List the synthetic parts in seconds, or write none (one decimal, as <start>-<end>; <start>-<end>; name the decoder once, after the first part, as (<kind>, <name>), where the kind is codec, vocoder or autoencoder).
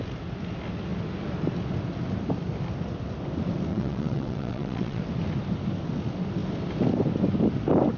3.7-5.0 (vocoder, WaveNeXt)